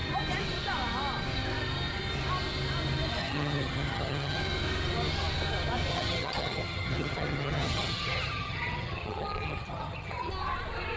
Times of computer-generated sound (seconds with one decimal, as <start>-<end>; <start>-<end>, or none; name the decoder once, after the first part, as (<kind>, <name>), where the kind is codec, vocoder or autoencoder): 3.2-4.4 (vocoder, HiFi-GAN); 5.9-10.3